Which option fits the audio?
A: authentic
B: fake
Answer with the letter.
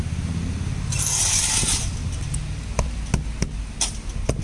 A